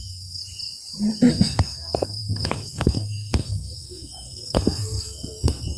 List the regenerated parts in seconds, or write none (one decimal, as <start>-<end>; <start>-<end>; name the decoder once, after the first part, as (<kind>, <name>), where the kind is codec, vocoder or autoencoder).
0.0-0.4 (codec, SNAC); 1.3-5.8